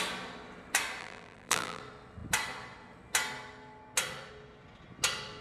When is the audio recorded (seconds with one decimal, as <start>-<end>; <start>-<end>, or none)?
0.0-1.0; 1.8-5.4